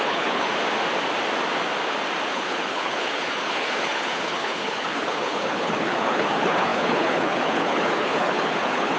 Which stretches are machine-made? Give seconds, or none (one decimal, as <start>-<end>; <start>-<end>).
0.0-0.5; 2.3-9.0